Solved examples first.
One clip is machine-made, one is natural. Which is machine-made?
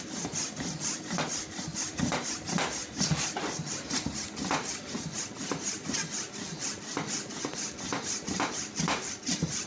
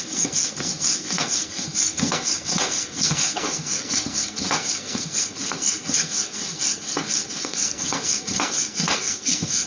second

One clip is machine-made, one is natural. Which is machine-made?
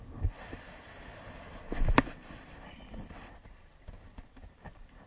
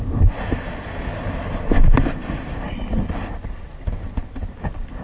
first